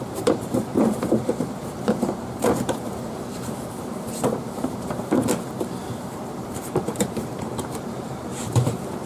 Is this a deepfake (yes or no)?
yes